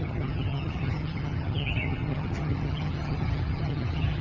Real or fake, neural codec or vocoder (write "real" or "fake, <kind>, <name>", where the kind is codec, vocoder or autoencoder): fake, vocoder, HiFi-GAN